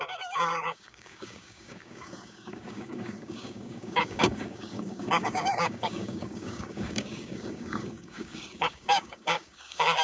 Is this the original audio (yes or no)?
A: no